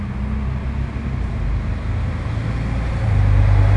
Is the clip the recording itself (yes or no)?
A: yes